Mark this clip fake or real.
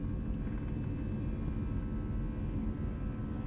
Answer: real